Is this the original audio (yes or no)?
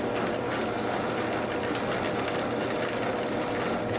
yes